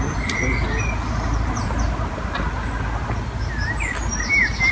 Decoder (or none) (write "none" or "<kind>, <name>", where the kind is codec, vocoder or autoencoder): none